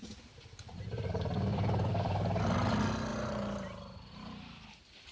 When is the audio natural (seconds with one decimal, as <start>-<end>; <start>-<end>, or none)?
1.1-1.5; 2.4-3.1